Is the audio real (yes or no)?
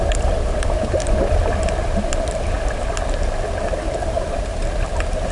yes